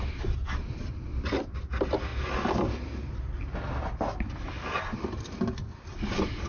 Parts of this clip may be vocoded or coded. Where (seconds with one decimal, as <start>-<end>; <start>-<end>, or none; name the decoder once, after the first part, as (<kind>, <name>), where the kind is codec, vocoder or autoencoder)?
none